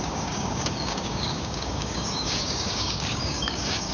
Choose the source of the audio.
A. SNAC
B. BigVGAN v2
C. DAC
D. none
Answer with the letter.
C